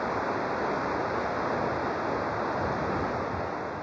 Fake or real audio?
real